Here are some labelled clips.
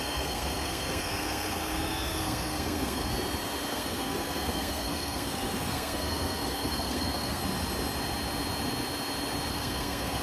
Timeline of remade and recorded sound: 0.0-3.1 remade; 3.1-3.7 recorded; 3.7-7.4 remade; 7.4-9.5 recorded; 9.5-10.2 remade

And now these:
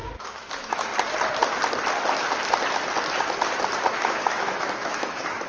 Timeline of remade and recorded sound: 0.0-0.9 remade; 0.9-4.0 recorded; 4.0-5.5 remade

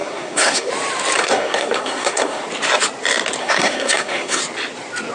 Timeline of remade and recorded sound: 0.0-0.7 remade; 0.7-1.2 recorded; 1.2-2.4 remade; 2.4-3.4 recorded; 3.4-4.4 remade; 4.4-5.1 recorded

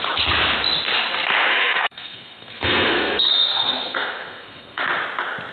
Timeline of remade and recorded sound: 0.0-1.5 recorded; 1.5-4.8 remade; 4.8-5.5 recorded

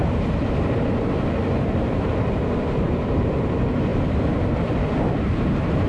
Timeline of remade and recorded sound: 0.0-1.4 recorded; 1.4-3.5 remade; 3.5-3.9 recorded; 3.9-5.9 remade

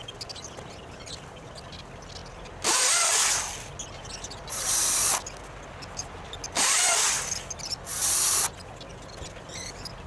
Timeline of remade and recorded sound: 0.0-10.1 recorded

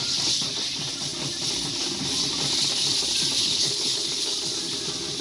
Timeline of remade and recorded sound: 0.0-3.4 recorded; 3.4-4.3 remade; 4.3-5.2 recorded

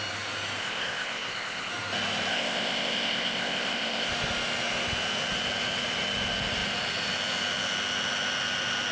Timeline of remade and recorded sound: 0.0-0.6 recorded; 0.6-1.7 remade; 1.7-2.3 recorded; 2.3-4.1 remade; 4.1-8.9 recorded